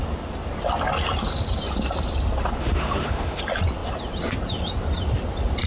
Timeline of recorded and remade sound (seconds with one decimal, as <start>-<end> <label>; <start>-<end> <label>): 0.0-2.6 recorded; 2.6-3.4 remade; 3.4-5.7 recorded